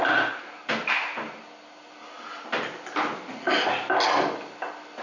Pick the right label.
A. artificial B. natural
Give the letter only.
B